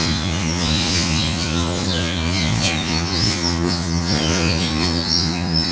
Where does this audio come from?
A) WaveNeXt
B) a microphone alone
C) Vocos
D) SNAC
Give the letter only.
C